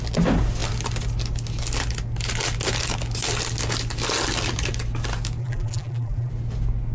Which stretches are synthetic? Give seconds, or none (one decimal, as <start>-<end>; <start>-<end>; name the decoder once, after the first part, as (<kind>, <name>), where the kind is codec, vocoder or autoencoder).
5.4-6.3 (vocoder, BigVGAN v2)